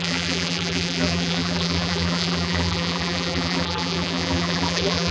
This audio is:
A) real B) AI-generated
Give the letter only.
B